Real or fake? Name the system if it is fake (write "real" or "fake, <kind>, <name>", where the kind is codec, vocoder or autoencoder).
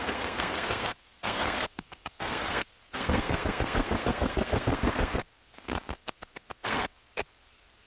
fake, codec, SNAC